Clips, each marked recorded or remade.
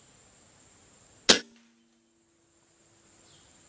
recorded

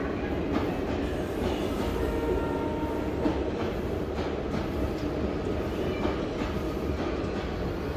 recorded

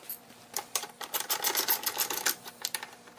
recorded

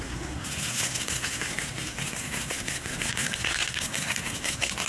remade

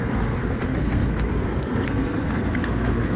remade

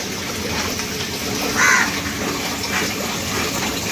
recorded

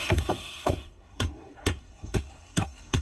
remade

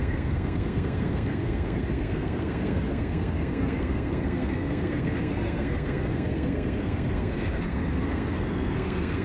remade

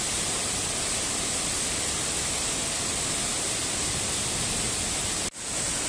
recorded